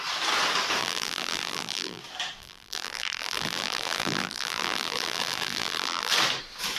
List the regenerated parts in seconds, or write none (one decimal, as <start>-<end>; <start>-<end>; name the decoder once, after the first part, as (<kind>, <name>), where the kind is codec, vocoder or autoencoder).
0.8-2.0 (vocoder, BigVGAN v2); 2.4-6.1